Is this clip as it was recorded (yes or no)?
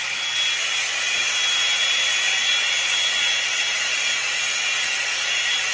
yes